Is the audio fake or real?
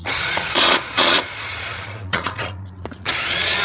fake